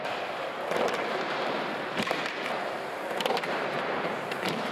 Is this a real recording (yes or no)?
no